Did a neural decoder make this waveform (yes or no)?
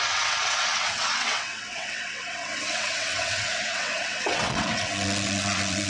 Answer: yes